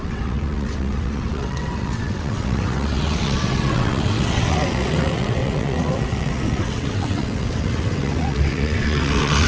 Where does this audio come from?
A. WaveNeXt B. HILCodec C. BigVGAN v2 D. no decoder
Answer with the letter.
A